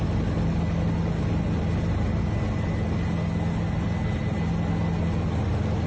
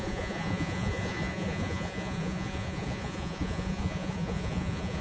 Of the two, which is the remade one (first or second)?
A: second